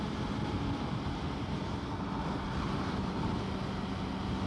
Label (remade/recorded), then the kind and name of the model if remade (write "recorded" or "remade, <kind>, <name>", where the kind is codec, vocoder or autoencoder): recorded